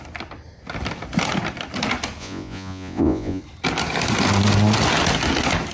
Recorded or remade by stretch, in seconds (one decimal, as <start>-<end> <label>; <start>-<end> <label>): 0.0-2.2 recorded; 2.2-3.4 remade; 3.4-5.7 recorded